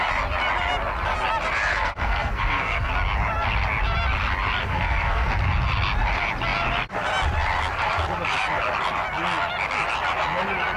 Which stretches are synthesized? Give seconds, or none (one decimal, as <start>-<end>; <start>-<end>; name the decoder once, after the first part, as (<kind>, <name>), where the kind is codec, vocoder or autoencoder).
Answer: 1.7-2.9 (codec, SNAC); 4.6-5.3